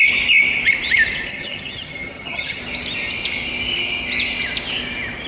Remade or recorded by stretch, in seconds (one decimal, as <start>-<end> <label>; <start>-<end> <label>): 0.0-1.3 recorded; 1.3-2.6 remade; 2.6-5.3 recorded